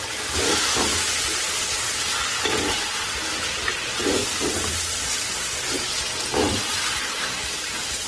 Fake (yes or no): no